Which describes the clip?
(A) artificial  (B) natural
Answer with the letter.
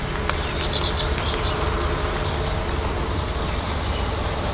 B